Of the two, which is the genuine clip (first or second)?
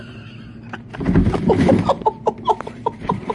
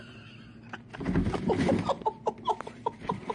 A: second